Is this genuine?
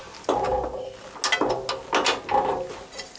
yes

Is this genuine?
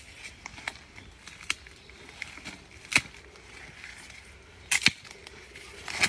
yes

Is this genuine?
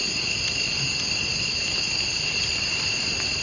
yes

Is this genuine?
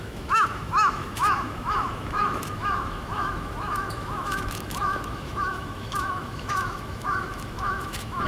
no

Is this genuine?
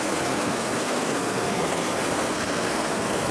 no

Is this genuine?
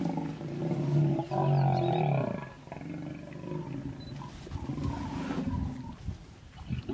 yes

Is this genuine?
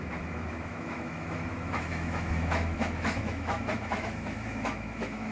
no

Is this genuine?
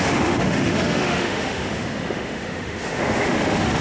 no